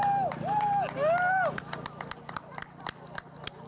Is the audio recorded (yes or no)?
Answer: yes